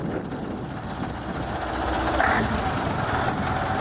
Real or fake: real